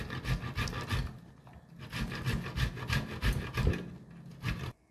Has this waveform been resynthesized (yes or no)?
no